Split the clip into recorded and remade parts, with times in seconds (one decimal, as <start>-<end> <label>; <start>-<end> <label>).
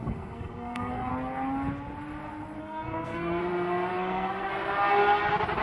0.0-1.1 remade; 1.1-2.6 recorded; 2.6-3.4 remade; 3.4-3.9 recorded; 3.9-4.5 remade; 4.5-5.6 recorded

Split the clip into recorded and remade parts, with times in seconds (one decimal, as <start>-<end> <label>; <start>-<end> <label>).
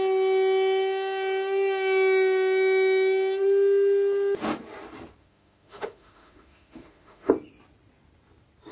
0.0-5.2 recorded; 5.2-7.3 remade; 7.3-8.7 recorded